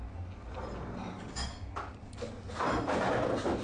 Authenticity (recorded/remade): recorded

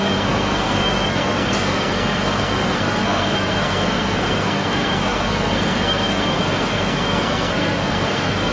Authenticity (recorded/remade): remade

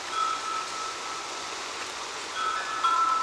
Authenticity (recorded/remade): remade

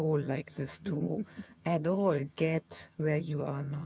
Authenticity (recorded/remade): remade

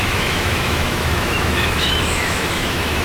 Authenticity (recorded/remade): remade